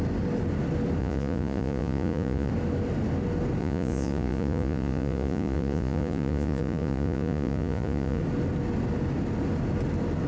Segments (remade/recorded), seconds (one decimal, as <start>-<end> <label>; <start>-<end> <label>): 0.0-1.0 recorded; 1.0-2.5 remade; 2.5-3.6 recorded; 3.6-8.2 remade; 8.2-10.3 recorded